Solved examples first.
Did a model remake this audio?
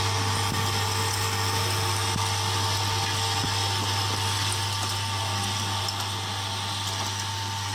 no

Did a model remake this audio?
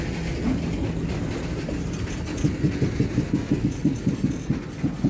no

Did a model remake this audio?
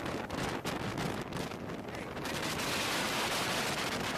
no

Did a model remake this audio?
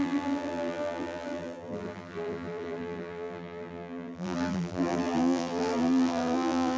yes